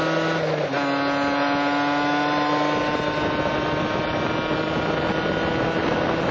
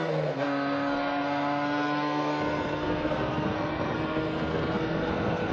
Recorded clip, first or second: first